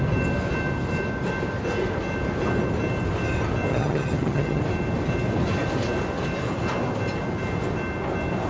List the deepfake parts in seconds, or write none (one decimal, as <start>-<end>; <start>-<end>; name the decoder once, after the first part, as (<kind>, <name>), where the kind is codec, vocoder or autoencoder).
3.7-4.6 (vocoder, HiFi-GAN)